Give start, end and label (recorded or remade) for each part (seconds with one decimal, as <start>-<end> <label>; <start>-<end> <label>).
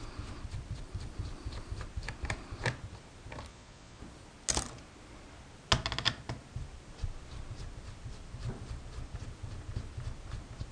0.0-3.5 recorded; 3.5-4.0 remade; 4.0-10.7 recorded